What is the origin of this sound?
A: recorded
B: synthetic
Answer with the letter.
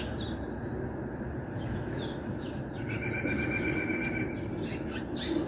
A